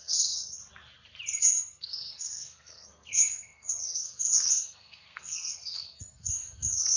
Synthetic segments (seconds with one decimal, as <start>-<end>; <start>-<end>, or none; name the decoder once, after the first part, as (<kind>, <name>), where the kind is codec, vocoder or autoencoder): 0.0-0.6 (codec, SNAC); 1.4-7.0